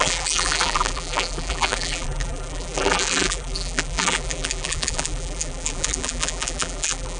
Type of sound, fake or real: fake